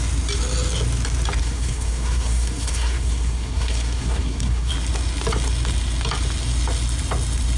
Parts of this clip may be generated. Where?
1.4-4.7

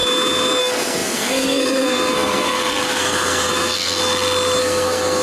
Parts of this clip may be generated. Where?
0.6-4.0; 4.6-5.2

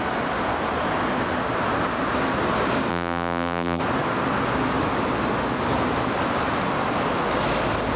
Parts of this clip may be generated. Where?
2.9-3.8

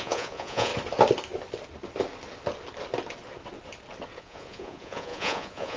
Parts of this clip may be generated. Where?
0.0-0.7; 4.2-5.8

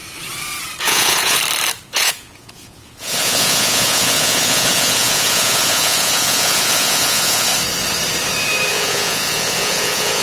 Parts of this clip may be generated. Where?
0.8-1.4; 1.9-7.5; 8.7-10.2

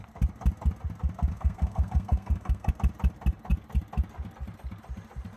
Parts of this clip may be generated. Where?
1.3-2.7